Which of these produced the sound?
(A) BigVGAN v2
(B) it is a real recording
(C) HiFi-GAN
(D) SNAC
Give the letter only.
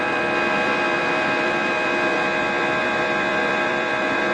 A